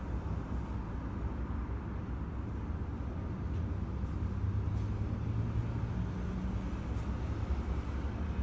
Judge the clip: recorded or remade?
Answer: recorded